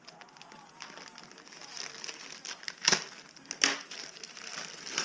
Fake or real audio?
real